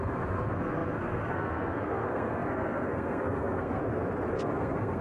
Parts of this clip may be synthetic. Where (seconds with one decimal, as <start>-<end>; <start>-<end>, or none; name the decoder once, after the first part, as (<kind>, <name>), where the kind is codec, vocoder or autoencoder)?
0.0-3.8 (codec, SNAC); 4.3-5.0